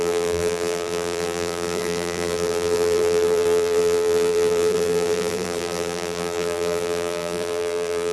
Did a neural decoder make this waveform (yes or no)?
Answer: yes